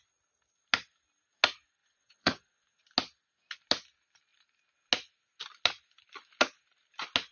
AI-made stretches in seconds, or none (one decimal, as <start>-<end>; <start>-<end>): 1.8-2.8